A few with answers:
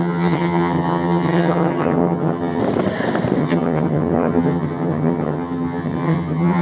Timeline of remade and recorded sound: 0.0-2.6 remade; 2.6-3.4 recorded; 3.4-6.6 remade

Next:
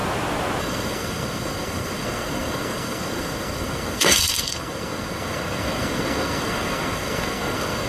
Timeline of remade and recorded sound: 0.0-0.6 recorded; 0.6-7.9 remade

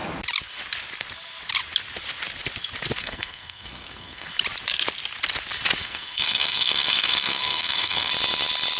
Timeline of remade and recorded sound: 0.0-3.0 recorded; 3.0-4.3 remade; 4.3-5.8 recorded; 5.8-8.1 remade; 8.1-8.8 recorded

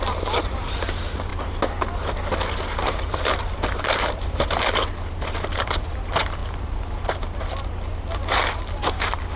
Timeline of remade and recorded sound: 0.0-1.3 remade; 1.3-2.9 recorded; 2.9-6.4 remade; 6.4-8.9 recorded; 8.9-9.4 remade